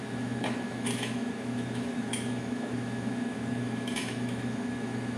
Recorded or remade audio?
remade